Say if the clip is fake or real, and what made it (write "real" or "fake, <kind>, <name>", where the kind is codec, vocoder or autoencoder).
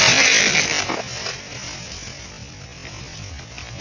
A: real